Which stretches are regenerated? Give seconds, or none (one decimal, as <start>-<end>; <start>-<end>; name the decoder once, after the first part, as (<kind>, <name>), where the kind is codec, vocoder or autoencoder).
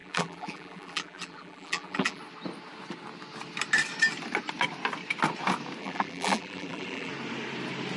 0.0-2.2 (vocoder, BigVGAN v2); 5.8-7.1